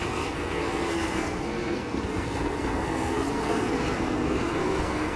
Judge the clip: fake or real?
fake